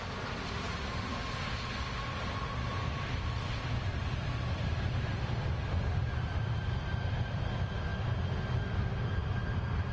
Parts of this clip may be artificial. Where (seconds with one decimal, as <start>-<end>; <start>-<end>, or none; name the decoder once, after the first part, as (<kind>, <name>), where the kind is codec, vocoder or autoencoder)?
none